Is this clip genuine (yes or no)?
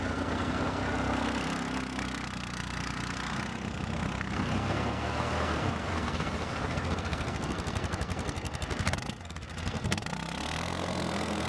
no